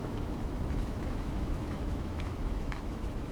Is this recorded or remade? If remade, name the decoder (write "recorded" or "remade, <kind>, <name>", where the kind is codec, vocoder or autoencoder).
remade, autoencoder, DAC-VAE